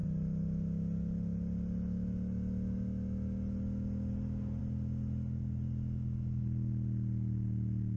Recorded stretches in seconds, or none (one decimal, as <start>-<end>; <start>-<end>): 0.0-8.0

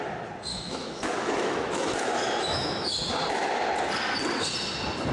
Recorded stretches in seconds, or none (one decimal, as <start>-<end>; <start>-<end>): 0.0-0.5; 3.1-5.1

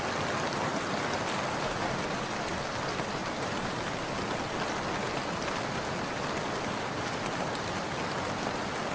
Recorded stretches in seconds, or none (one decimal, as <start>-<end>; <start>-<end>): 0.0-8.9

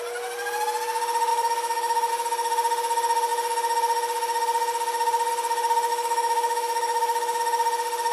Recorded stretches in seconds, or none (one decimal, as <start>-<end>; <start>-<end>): 0.0-1.3; 2.1-5.9; 7.4-8.1